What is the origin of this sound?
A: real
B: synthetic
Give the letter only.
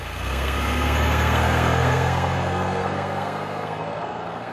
B